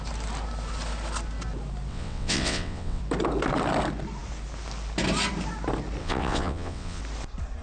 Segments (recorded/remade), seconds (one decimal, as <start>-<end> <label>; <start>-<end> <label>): 0.0-1.9 recorded; 1.9-3.0 remade; 3.0-6.0 recorded; 6.0-7.0 remade; 7.0-7.6 recorded